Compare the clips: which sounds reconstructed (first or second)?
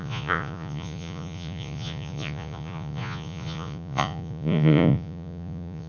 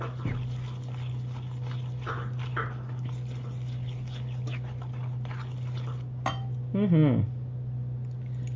first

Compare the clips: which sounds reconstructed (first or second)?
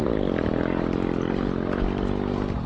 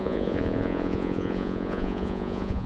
second